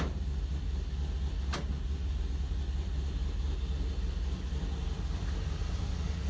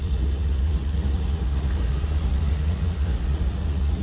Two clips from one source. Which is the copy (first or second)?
second